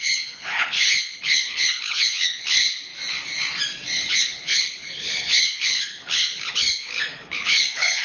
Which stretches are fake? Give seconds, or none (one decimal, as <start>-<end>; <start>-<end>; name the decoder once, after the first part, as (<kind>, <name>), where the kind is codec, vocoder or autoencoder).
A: 0.0-2.9 (codec, HILCodec); 4.1-8.0